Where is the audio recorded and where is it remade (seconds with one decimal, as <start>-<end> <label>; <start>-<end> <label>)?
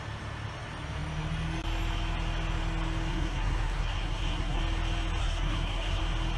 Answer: 0.0-3.1 recorded; 3.1-4.6 remade; 4.6-5.2 recorded; 5.2-6.0 remade; 6.0-6.4 recorded